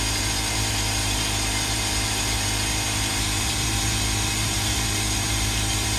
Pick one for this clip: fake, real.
fake